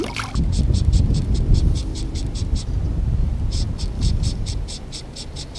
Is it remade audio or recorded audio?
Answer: recorded